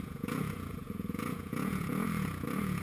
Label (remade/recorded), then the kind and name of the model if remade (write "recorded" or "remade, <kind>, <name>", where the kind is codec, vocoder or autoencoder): remade, vocoder, Vocos